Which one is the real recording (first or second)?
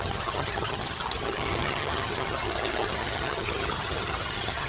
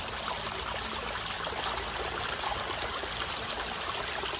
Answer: second